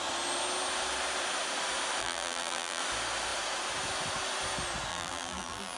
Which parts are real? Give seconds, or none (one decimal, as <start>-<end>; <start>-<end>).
0.0-2.0; 2.8-4.9